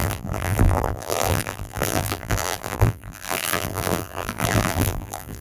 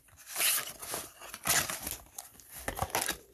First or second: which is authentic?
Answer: second